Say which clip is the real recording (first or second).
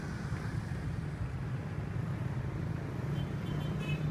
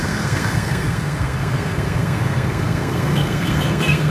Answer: first